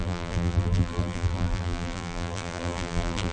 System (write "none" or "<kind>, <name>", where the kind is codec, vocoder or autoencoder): vocoder, BigVGAN v2